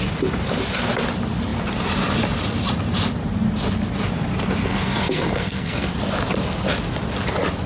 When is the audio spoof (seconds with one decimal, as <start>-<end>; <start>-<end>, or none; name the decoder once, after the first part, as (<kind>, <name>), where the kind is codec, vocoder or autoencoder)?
4.6-5.9 (codec, SNAC)